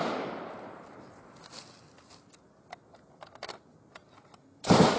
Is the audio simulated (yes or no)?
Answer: no